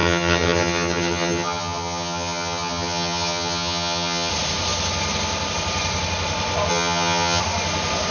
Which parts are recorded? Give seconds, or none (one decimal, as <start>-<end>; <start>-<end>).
4.3-6.7; 7.4-8.1